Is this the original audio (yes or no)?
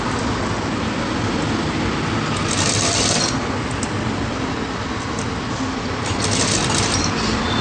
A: yes